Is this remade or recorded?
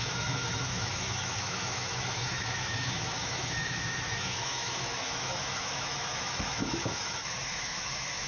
remade